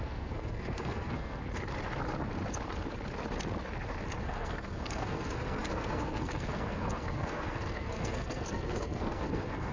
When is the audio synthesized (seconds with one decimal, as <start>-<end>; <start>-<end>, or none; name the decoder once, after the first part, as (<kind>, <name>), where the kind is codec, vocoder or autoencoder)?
0.0-1.4 (codec, SNAC); 4.2-9.7